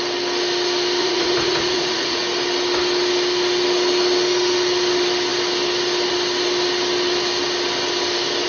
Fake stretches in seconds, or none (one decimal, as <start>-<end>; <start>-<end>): 1.0-2.2